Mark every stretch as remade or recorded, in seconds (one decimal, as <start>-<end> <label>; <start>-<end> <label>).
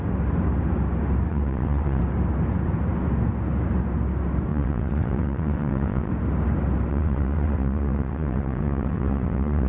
0.0-1.3 recorded; 1.3-2.0 remade; 2.0-4.5 recorded; 4.5-6.1 remade; 6.1-6.9 recorded; 6.9-9.7 remade